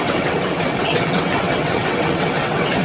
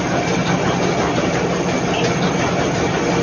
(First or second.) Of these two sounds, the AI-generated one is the first